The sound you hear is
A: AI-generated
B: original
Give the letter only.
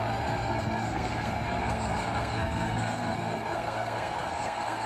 A